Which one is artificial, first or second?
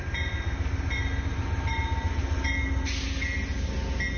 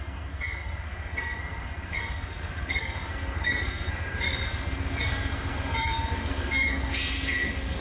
second